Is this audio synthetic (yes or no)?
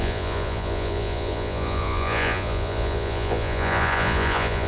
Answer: yes